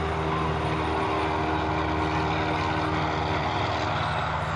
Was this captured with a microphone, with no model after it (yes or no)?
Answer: yes